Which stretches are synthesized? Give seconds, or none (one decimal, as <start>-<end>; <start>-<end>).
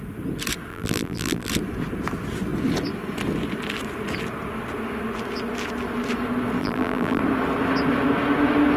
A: 0.7-1.5; 6.6-7.2